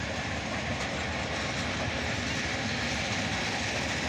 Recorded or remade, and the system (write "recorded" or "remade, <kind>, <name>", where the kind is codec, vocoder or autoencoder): recorded